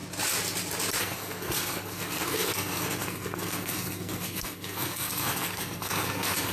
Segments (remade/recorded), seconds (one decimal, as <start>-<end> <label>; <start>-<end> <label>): 0.0-1.0 recorded; 1.0-6.5 remade